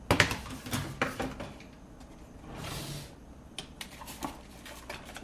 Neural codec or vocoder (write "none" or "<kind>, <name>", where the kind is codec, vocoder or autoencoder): none